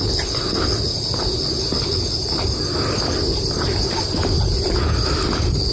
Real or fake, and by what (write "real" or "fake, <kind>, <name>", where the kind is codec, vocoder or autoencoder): real